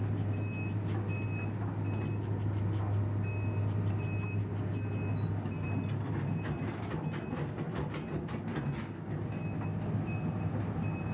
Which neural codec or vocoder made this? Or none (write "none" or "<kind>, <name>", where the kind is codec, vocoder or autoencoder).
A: none